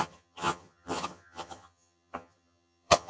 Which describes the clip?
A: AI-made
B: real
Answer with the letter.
A